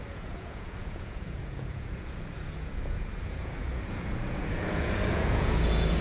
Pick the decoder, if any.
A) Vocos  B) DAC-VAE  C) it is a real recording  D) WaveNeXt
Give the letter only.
A